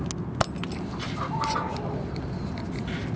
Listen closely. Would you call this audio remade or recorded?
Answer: recorded